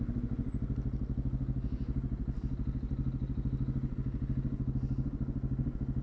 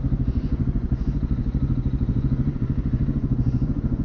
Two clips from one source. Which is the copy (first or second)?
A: second